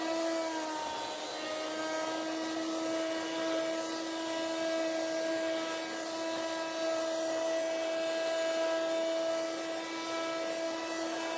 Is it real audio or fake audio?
real